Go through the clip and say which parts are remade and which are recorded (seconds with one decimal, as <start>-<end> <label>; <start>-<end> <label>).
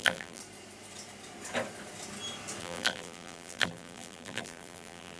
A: 0.0-0.4 remade; 0.4-2.6 recorded; 2.6-5.2 remade